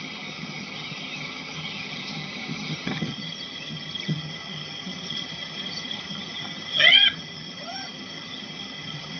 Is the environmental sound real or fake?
fake